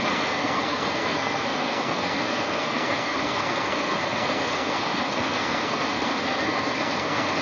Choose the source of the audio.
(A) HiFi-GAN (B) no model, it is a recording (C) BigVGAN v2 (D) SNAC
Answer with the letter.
D